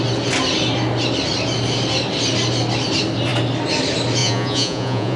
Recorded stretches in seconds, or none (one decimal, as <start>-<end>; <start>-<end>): 0.0-4.2